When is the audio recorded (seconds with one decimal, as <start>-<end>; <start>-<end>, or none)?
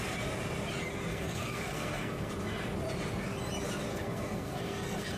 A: 0.0-1.1; 2.3-3.9